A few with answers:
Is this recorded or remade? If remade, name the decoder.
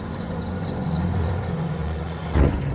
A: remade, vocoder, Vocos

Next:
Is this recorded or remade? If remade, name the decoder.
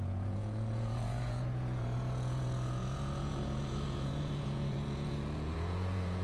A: remade, vocoder, Vocos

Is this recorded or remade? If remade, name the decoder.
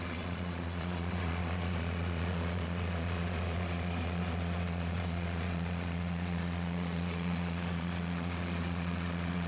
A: remade, vocoder, Vocos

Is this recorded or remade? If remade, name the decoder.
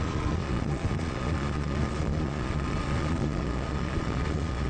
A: remade, vocoder, Vocos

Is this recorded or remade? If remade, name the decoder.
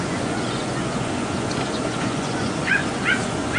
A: remade, vocoder, Vocos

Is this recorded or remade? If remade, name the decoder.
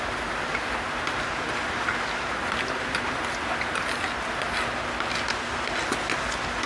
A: recorded